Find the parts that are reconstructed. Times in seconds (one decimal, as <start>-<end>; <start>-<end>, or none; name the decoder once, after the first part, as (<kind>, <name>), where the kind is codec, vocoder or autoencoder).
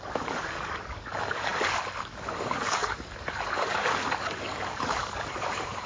0.0-5.9 (codec, DAC)